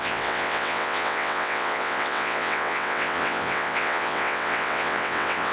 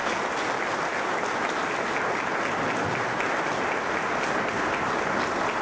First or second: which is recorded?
second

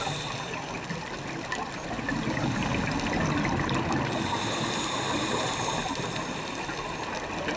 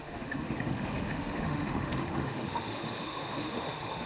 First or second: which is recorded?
first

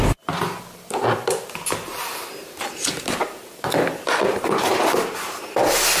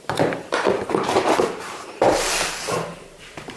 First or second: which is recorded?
first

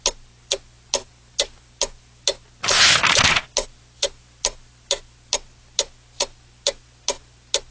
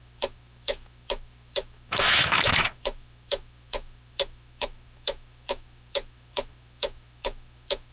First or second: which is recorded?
first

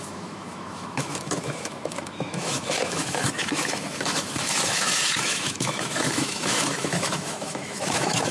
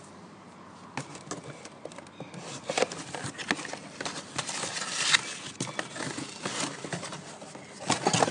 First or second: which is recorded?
second